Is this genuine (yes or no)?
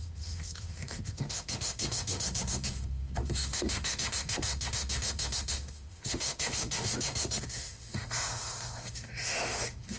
no